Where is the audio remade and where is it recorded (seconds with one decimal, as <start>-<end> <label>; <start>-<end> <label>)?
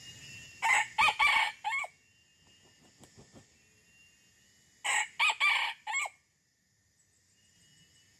0.0-8.2 recorded